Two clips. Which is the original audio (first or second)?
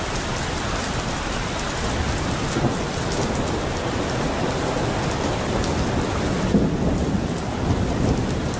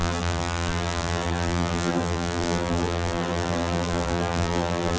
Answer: first